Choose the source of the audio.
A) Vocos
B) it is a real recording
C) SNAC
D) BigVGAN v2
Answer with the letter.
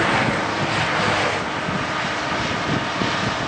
B